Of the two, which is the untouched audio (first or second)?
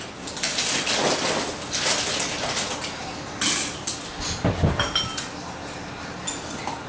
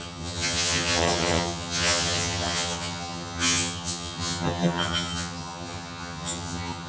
first